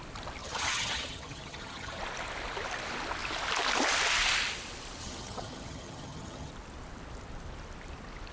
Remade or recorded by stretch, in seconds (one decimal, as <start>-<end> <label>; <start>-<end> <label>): 0.0-0.4 recorded; 0.4-2.0 remade; 2.0-5.0 recorded; 5.0-6.5 remade; 6.5-8.3 recorded